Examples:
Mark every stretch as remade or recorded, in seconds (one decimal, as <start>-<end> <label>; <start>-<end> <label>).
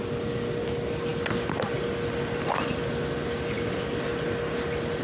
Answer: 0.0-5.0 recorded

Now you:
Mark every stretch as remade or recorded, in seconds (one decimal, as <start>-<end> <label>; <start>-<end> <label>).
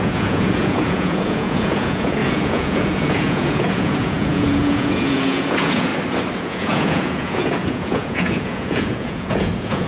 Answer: 0.0-5.9 remade; 5.9-6.4 recorded; 6.4-9.9 remade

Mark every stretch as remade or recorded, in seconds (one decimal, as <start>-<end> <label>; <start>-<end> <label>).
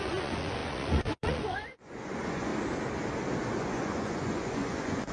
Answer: 0.0-2.5 remade; 2.5-3.5 recorded; 3.5-5.1 remade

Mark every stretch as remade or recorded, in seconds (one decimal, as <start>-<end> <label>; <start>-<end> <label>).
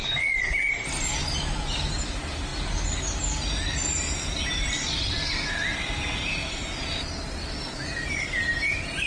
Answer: 0.0-9.1 recorded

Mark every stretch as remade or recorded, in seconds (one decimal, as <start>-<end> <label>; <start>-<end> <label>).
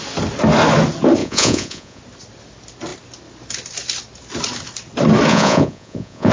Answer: 0.0-1.2 recorded; 1.2-2.0 remade; 2.0-5.3 recorded; 5.3-6.3 remade